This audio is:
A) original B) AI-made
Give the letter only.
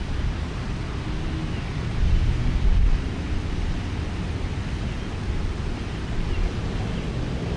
A